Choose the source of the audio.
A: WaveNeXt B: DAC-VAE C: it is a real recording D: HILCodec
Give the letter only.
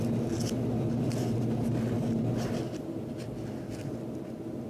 C